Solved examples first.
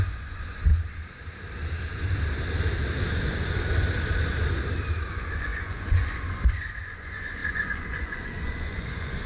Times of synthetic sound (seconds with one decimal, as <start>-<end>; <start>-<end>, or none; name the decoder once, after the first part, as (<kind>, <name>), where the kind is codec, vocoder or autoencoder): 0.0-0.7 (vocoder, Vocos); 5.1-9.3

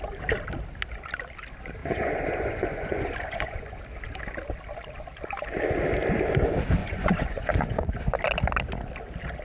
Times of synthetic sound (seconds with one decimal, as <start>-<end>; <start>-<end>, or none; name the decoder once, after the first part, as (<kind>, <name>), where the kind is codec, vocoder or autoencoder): 1.8-3.8 (vocoder, Vocos); 6.8-8.1

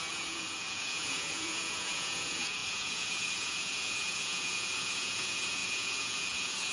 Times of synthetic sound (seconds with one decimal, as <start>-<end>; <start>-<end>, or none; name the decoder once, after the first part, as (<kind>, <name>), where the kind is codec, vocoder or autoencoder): 0.0-6.7 (vocoder, Vocos)